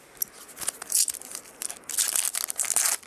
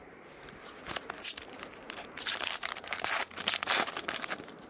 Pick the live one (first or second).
first